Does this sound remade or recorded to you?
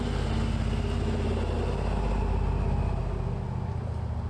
recorded